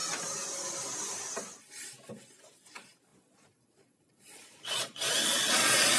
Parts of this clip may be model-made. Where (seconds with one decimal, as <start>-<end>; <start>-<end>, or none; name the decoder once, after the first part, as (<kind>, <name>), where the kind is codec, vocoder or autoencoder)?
3.1-6.0 (vocoder, Vocos)